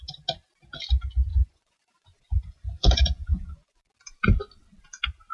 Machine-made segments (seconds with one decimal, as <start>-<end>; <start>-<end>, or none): 1.3-3.9